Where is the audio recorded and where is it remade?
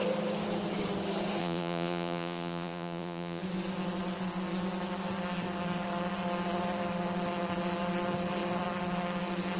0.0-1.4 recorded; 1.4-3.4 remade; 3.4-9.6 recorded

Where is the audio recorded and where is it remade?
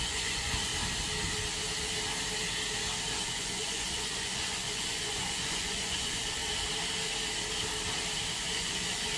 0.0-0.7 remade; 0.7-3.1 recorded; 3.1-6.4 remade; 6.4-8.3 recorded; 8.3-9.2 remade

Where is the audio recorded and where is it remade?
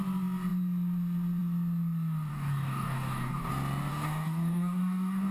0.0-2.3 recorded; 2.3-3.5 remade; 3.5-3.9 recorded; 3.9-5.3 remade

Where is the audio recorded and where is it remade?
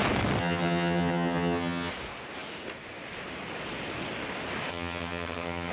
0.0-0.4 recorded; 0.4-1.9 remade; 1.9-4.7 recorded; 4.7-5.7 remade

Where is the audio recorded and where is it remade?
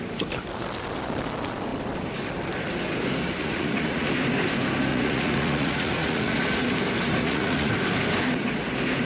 0.0-3.4 recorded; 3.4-4.1 remade; 4.1-4.9 recorded; 4.9-6.4 remade; 6.4-7.2 recorded; 7.2-7.7 remade; 7.7-9.1 recorded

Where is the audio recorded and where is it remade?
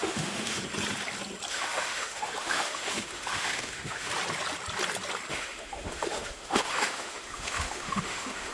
0.0-0.6 remade; 0.6-1.5 recorded; 1.5-4.1 remade; 4.1-5.3 recorded; 5.3-8.5 remade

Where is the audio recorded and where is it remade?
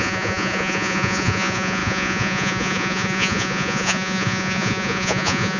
0.0-5.6 remade